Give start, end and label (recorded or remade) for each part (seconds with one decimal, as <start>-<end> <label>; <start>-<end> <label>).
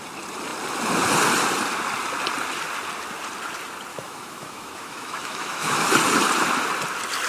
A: 0.0-3.9 recorded; 3.9-5.9 remade; 5.9-7.3 recorded